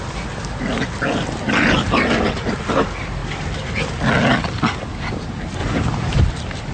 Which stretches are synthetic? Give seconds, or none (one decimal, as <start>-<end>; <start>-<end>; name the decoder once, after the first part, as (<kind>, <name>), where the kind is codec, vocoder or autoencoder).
5.6-6.2 (vocoder, BigVGAN v2)